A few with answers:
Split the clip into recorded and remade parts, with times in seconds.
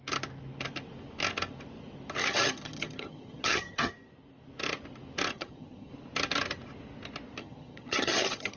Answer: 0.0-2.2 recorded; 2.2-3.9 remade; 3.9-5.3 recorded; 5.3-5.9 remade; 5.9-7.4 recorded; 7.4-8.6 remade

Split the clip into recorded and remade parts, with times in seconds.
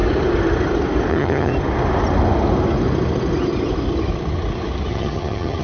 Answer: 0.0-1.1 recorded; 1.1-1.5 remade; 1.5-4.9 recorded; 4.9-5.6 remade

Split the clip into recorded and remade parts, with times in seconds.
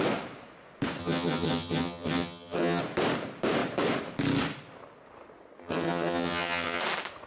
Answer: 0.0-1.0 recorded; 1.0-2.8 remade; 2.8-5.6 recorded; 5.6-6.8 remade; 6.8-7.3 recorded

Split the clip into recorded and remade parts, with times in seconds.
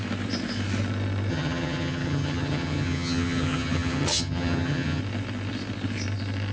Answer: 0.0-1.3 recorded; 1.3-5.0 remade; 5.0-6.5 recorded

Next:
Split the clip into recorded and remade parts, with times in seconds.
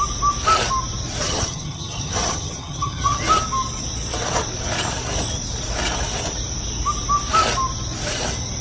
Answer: 0.0-1.2 recorded; 1.2-3.2 remade; 3.2-8.6 recorded